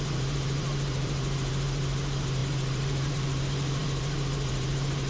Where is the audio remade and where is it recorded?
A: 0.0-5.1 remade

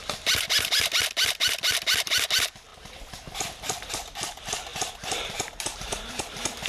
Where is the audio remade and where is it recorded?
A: 0.0-4.7 remade; 4.7-6.1 recorded; 6.1-6.7 remade

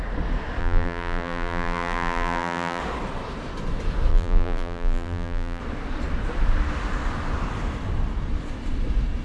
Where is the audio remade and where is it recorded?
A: 0.0-0.6 recorded; 0.6-2.8 remade; 2.8-4.1 recorded; 4.1-5.6 remade; 5.6-9.2 recorded

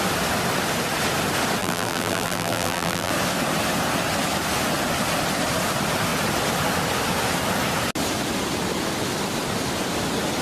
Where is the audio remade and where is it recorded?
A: 0.0-1.6 recorded; 1.6-3.1 remade; 3.1-10.4 recorded